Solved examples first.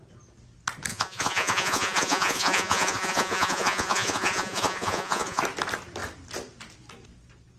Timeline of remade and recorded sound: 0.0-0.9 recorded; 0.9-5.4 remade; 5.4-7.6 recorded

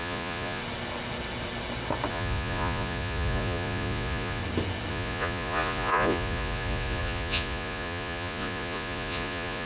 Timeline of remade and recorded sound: 0.0-0.6 remade; 0.6-2.1 recorded; 2.1-4.4 remade; 4.4-4.9 recorded; 4.9-9.7 remade

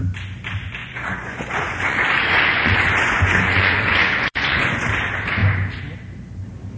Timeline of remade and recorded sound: 0.0-0.8 recorded; 0.8-4.9 remade; 4.9-6.8 recorded

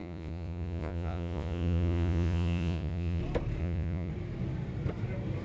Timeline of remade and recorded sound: 0.0-3.2 remade; 3.2-3.6 recorded; 3.6-4.1 remade; 4.1-5.4 recorded

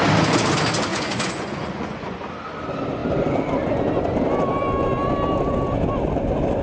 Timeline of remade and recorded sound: 0.0-0.9 recorded; 0.9-2.2 remade; 2.2-6.6 recorded

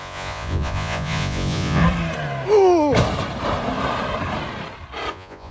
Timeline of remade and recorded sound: 0.0-1.8 remade; 1.8-5.1 recorded; 5.1-5.5 remade